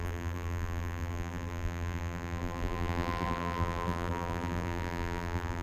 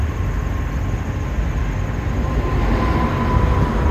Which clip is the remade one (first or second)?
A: first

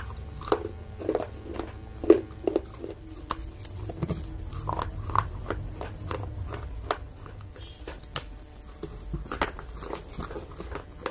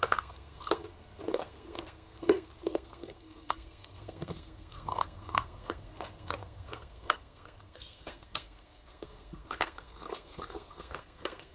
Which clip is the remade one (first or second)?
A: second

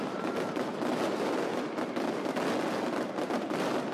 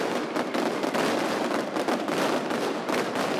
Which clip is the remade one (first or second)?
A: second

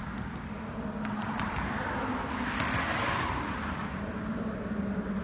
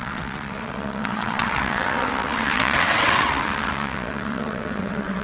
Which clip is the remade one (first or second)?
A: second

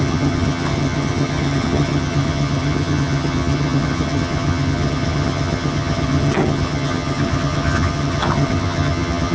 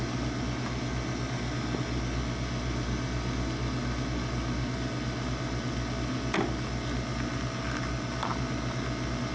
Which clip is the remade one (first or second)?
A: first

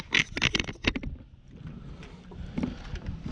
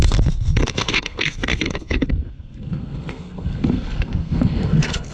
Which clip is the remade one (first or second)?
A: second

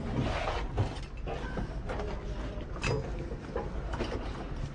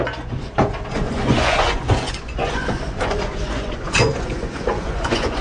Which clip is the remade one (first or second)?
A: second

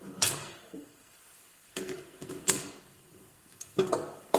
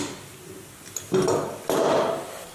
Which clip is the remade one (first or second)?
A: first